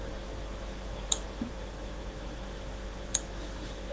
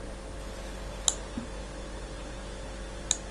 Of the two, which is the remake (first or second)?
first